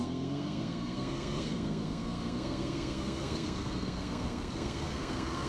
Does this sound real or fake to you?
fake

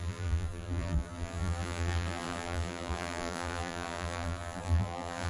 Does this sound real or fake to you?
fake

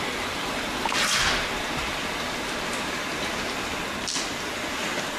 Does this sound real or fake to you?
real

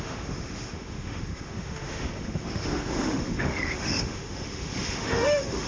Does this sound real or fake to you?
fake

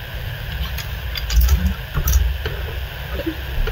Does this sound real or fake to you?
real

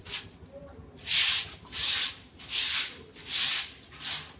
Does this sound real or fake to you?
real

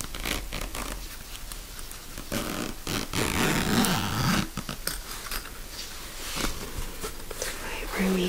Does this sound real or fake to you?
real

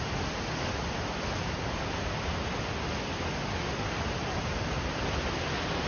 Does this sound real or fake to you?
real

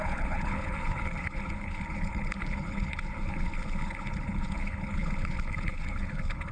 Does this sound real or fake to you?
fake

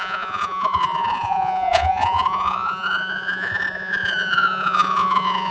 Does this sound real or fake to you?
fake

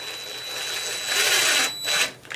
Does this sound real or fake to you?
real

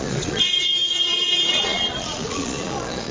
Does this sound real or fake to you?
fake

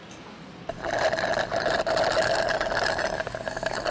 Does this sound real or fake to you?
real